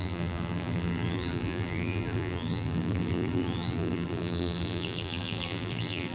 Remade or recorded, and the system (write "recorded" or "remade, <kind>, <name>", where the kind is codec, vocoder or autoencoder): remade, vocoder, BigVGAN v2